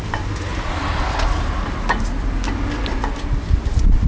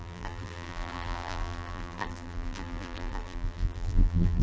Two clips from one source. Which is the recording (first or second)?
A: first